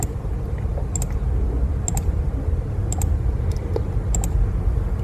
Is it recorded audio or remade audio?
recorded